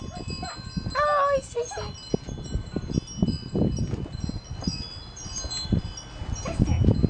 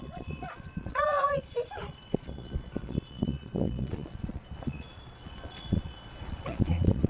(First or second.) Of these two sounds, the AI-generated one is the second